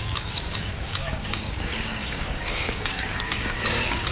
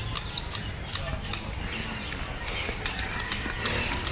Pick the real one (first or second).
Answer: second